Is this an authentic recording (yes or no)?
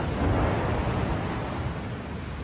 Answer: yes